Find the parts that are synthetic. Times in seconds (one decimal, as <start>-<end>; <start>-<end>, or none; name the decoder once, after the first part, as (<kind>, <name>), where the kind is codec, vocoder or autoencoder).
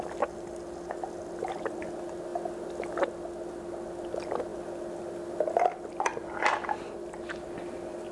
none